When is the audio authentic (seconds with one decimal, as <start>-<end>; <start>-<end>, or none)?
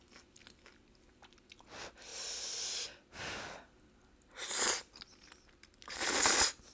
0.0-6.7